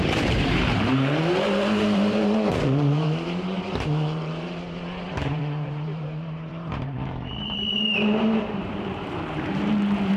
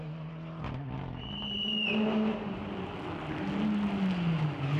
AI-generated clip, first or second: first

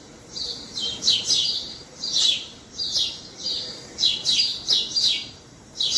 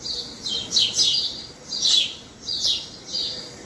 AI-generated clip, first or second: first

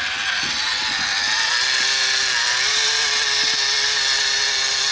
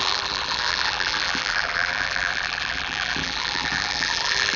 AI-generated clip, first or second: second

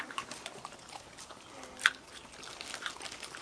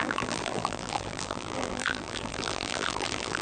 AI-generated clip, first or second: second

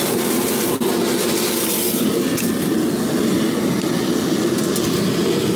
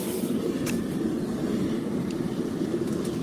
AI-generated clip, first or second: second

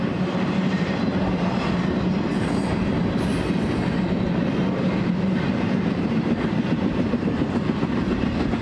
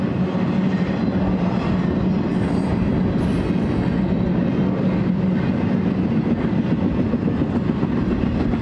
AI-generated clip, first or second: first